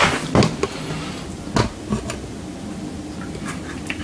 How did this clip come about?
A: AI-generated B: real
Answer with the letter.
B